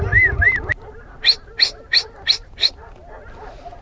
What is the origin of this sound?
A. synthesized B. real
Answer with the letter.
B